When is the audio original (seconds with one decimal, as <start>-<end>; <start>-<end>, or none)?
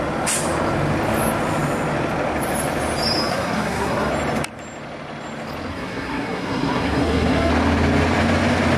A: 0.0-3.3; 4.1-5.7; 7.5-8.8